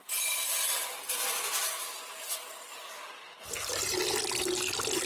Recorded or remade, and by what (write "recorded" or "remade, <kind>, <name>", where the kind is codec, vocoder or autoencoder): recorded